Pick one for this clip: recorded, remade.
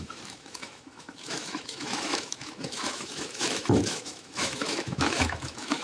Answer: remade